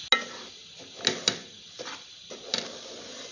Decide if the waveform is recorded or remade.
recorded